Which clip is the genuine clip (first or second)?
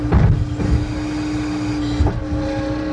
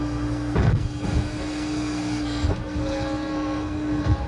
first